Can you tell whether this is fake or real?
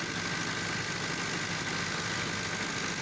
real